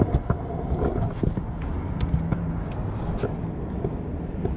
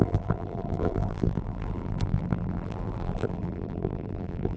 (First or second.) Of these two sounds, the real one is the first